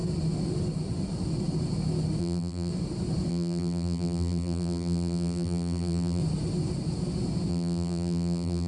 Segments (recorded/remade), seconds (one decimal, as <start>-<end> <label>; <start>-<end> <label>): 0.0-2.2 recorded; 2.2-2.7 remade; 2.7-3.3 recorded; 3.3-6.2 remade; 6.2-7.5 recorded; 7.5-8.7 remade